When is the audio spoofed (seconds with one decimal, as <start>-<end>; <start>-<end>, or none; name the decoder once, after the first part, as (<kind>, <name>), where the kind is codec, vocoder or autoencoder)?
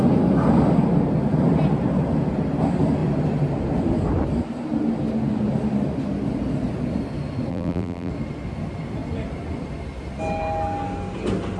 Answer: 7.5-8.1 (vocoder, BigVGAN v2)